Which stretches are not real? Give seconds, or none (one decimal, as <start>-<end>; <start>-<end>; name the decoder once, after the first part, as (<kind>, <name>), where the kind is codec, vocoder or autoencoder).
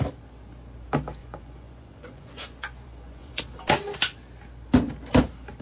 1.2-3.4 (vocoder, Vocos)